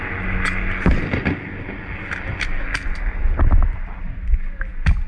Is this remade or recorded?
recorded